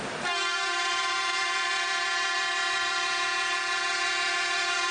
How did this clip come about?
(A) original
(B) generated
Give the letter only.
A